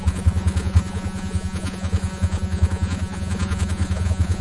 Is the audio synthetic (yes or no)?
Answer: yes